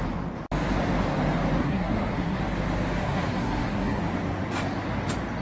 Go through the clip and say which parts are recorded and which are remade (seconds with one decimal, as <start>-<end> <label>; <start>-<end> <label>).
0.0-1.6 recorded; 1.6-2.4 remade; 2.4-3.0 recorded; 3.0-4.0 remade; 4.0-5.4 recorded